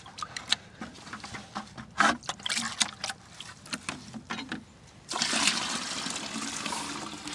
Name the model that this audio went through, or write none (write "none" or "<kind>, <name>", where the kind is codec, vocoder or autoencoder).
none